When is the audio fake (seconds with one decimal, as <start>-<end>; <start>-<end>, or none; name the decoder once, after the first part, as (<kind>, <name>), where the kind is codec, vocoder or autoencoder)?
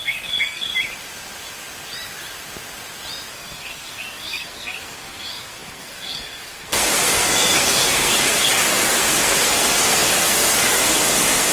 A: 0.0-0.7 (codec, SNAC); 3.3-11.5